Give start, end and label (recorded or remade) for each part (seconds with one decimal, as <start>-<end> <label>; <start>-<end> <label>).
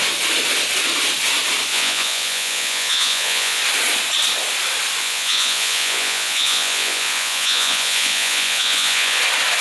0.0-1.7 recorded; 1.7-3.6 remade; 3.6-5.0 recorded; 5.0-9.2 remade; 9.2-9.6 recorded